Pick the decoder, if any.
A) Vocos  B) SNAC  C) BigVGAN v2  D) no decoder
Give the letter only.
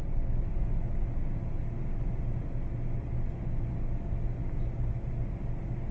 D